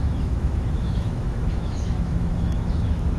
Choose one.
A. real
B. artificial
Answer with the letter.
B